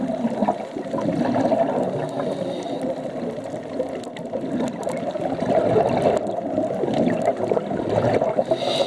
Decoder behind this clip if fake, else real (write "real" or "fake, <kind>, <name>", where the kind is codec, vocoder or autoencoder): real